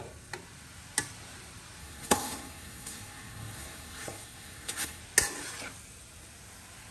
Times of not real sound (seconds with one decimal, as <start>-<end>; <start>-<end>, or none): 1.8-5.0